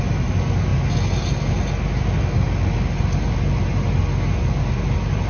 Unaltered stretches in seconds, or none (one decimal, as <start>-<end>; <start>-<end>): 0.0-5.3

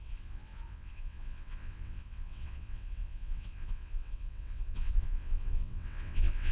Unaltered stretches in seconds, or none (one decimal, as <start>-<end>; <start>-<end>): none

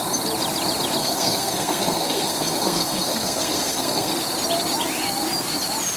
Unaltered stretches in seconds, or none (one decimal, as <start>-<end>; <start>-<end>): 0.0-1.0; 4.1-6.0

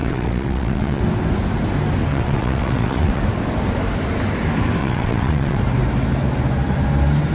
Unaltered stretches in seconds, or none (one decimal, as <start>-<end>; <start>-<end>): 1.0-2.1; 3.2-4.8; 5.6-7.3

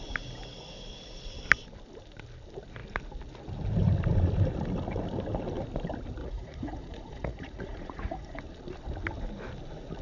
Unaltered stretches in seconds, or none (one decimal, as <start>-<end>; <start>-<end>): 0.0-6.2; 8.4-10.0

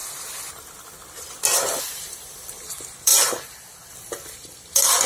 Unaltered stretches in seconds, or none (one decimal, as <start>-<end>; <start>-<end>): 0.0-1.8; 3.1-3.9